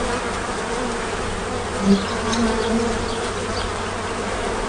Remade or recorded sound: recorded